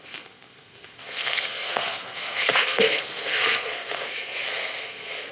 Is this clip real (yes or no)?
no